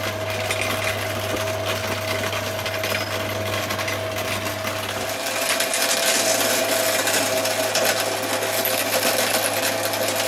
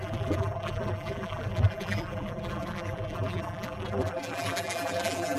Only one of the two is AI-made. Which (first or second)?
second